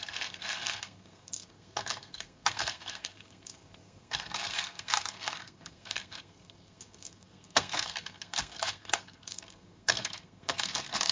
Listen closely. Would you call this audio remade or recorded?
remade